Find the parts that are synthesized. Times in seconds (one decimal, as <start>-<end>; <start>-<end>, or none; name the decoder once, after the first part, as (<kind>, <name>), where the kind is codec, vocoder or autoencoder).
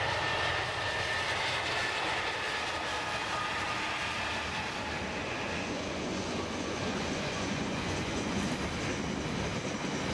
5.2-8.5 (vocoder, Vocos)